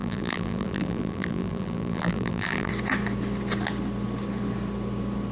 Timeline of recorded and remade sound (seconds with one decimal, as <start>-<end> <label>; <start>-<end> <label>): 0.0-2.7 remade; 2.7-5.3 recorded